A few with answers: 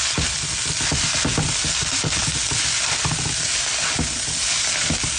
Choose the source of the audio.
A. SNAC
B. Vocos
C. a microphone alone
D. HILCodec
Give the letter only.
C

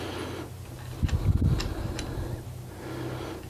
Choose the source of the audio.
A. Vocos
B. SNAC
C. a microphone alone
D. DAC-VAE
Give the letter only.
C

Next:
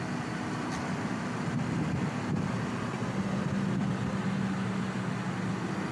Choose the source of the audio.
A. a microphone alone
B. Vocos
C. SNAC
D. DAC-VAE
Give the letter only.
A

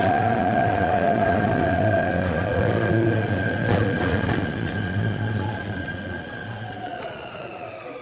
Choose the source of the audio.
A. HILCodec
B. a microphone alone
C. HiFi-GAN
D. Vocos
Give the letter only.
D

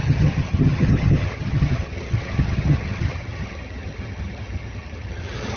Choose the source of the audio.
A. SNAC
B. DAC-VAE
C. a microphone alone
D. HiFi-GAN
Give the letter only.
D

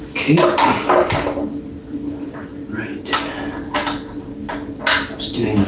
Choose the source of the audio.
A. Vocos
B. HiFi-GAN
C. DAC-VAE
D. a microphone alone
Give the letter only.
D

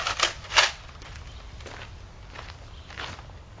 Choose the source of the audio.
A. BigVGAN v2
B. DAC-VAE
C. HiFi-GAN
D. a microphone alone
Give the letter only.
D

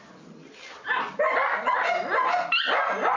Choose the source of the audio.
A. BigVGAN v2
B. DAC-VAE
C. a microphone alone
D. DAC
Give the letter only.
C